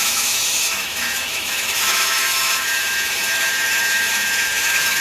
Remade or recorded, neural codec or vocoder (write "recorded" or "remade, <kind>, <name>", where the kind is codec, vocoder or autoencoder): remade, autoencoder, DAC-VAE